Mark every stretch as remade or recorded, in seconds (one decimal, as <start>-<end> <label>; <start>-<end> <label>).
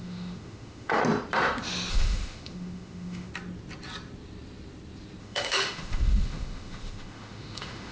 0.0-1.0 remade; 1.0-1.9 recorded; 1.9-3.3 remade; 3.3-5.2 recorded; 5.2-7.9 remade